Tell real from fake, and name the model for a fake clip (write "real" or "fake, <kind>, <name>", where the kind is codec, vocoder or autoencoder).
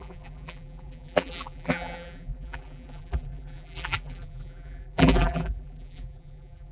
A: fake, vocoder, BigVGAN v2